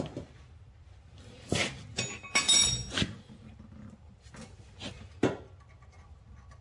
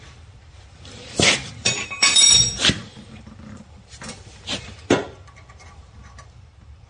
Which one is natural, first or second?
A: first